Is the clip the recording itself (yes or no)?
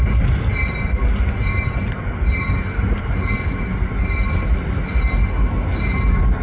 yes